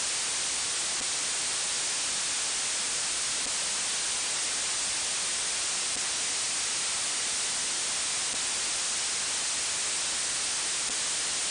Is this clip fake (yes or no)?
no